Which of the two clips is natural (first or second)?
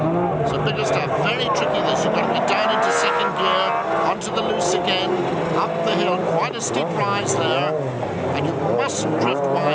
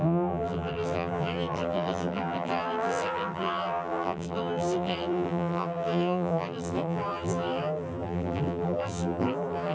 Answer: first